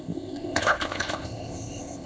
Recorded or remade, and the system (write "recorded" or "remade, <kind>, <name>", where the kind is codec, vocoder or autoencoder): remade, codec, ZipCodec